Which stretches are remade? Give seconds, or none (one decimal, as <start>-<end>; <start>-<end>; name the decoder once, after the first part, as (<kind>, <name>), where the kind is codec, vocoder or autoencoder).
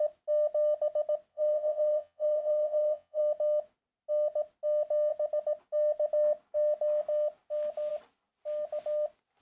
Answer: 1.3-3.2 (vocoder, WaveNeXt)